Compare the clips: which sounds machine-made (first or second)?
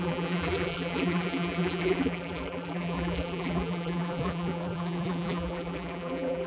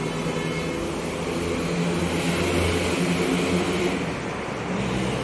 first